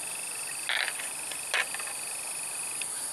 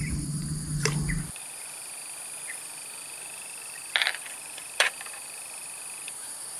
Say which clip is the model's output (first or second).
second